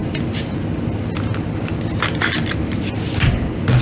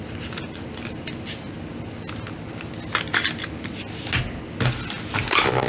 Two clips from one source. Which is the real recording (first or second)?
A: second